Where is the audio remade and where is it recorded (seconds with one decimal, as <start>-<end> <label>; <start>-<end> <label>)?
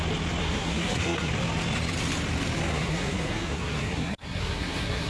0.0-0.4 recorded; 0.4-1.3 remade; 1.3-2.7 recorded; 2.7-5.1 remade